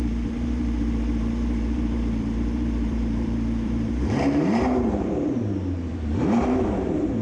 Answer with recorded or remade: remade